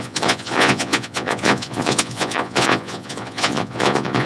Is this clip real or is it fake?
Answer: fake